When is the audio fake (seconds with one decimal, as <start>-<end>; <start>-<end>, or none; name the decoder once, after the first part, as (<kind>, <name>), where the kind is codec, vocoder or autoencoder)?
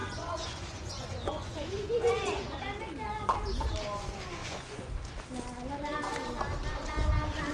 0.0-2.6 (vocoder, Vocos); 4.4-4.9